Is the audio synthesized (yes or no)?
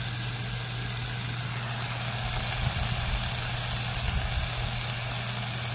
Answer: no